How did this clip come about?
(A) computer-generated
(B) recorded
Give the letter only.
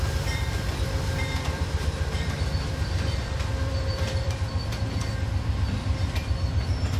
A